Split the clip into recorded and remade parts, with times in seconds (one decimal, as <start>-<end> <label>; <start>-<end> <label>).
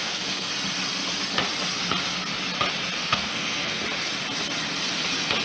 0.0-0.5 remade; 0.5-3.0 recorded; 3.0-3.8 remade; 3.8-5.4 recorded